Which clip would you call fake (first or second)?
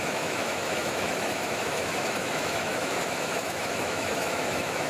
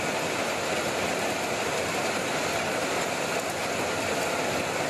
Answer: first